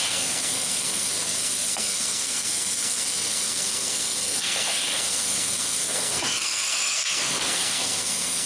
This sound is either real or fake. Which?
fake